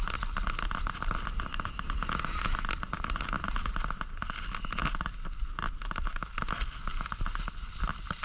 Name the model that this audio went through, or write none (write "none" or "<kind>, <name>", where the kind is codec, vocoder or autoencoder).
none